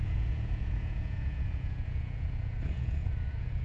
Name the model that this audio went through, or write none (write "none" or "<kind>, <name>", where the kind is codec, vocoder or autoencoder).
vocoder, Vocos